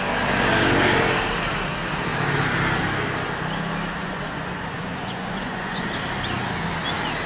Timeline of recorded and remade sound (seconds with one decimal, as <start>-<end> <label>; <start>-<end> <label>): 0.0-4.0 recorded; 4.0-5.9 remade; 5.9-7.3 recorded